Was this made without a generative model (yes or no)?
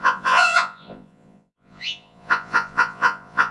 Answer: no